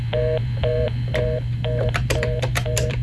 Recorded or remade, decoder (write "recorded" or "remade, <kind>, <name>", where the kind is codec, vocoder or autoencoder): remade, vocoder, BigVGAN v2